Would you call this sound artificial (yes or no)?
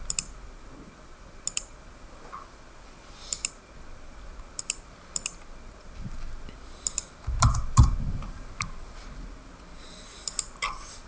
no